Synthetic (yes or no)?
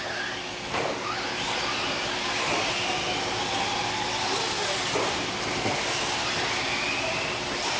no